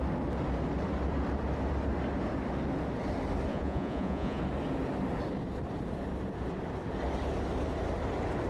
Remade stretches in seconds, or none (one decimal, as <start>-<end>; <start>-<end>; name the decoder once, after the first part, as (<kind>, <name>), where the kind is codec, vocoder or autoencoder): 3.5-4.4 (vocoder, Vocos)